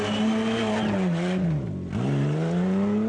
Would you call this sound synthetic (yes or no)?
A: no